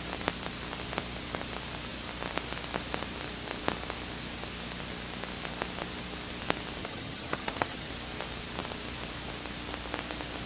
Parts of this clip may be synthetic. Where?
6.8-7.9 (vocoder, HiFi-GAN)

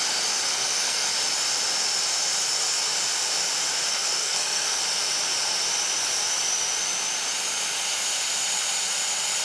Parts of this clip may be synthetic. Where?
0.5-1.1 (codec, SNAC); 3.9-4.8

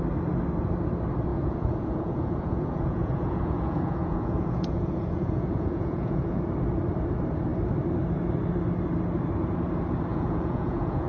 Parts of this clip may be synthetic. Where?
1.3-6.4 (vocoder, Vocos); 10.1-11.1

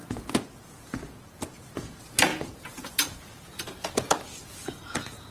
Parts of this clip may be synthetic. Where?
0.0-5.3 (vocoder, Vocos)

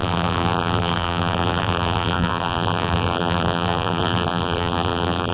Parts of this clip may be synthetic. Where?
0.0-5.3 (vocoder, BigVGAN v2)